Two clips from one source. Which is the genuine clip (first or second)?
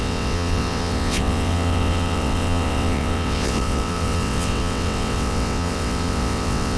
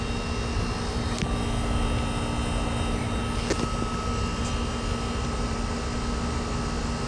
second